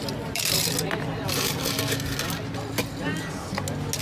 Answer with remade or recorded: recorded